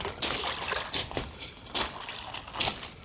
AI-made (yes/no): yes